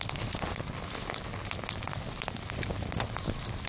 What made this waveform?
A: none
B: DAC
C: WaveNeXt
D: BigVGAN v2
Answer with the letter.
A